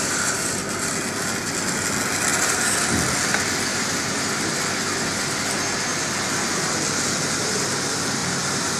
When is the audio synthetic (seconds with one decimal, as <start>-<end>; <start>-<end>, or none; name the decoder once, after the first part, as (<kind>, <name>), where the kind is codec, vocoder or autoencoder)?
2.3-2.9 (vocoder, BigVGAN v2); 3.7-4.5; 8.2-8.8